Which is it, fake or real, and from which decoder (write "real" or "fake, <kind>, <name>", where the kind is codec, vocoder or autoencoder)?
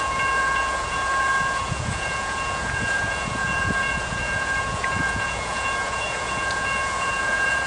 fake, vocoder, Vocos